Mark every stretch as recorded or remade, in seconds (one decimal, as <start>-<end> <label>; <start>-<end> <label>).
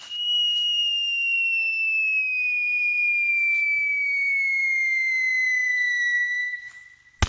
0.0-0.8 recorded; 0.8-3.3 remade; 3.3-5.7 recorded; 5.7-6.7 remade; 6.7-7.3 recorded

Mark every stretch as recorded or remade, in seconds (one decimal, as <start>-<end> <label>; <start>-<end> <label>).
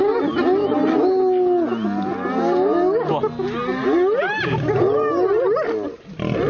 0.0-6.5 recorded